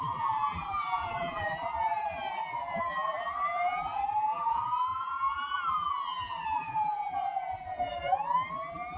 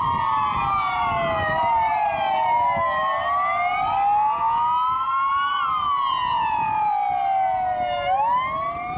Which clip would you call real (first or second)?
second